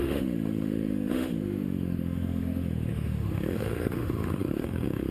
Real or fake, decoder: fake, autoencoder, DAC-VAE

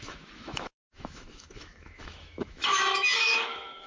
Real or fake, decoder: fake, autoencoder, DAC-VAE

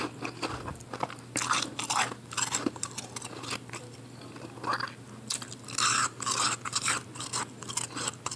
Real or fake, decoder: real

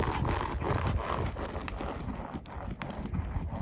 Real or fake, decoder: real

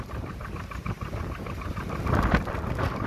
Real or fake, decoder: real